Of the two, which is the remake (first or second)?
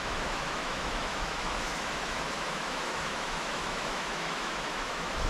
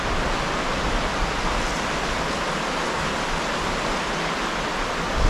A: first